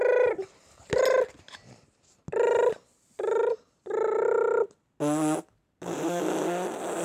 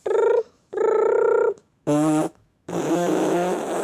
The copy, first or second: second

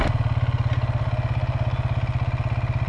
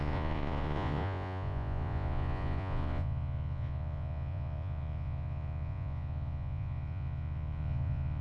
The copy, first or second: second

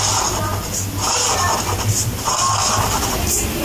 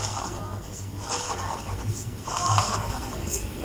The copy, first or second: second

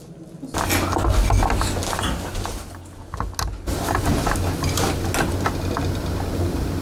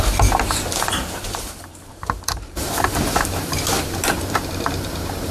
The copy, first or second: second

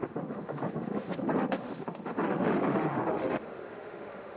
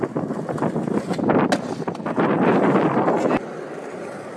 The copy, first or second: first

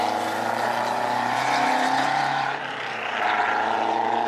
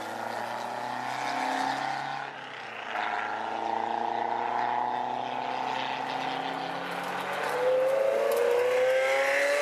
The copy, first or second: first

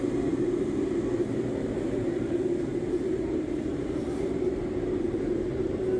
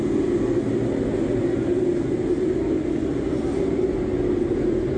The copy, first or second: first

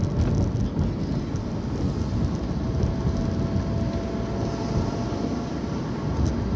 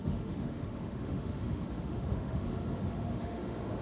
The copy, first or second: second